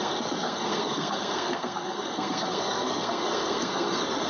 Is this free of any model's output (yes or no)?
no